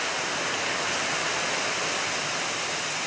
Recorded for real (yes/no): yes